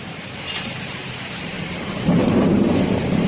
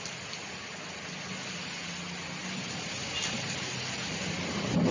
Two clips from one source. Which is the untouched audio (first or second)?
second